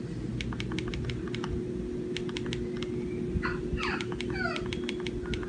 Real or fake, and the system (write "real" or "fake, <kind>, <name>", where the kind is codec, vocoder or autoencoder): real